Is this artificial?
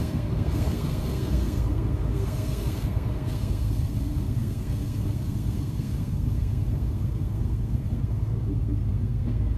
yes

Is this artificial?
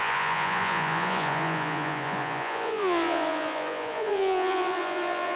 yes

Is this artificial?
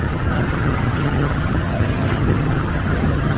yes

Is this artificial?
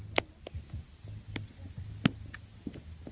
no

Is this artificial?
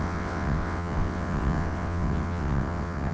yes